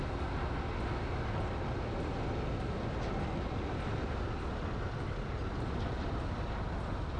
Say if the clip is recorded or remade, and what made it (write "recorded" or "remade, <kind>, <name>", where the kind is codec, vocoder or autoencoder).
recorded